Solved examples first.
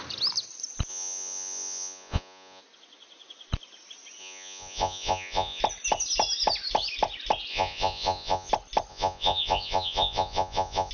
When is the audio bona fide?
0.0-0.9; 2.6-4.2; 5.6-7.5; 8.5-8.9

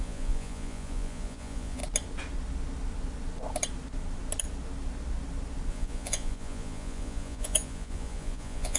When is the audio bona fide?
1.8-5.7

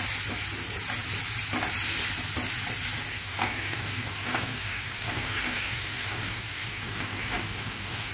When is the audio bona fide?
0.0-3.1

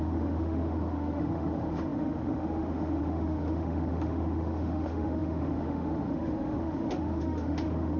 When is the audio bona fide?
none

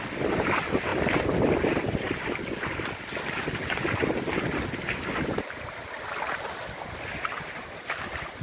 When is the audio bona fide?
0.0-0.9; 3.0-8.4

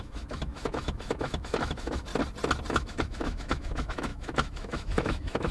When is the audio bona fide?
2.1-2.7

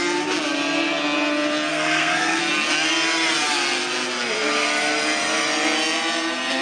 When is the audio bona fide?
0.0-1.7; 2.4-6.6